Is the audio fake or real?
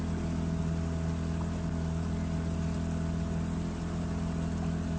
real